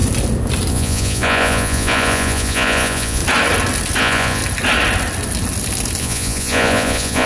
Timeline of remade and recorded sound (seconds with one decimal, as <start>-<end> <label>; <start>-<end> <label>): 0.0-0.7 recorded; 0.7-3.2 remade; 3.2-4.0 recorded; 4.0-4.4 remade; 4.4-6.0 recorded; 6.0-7.3 remade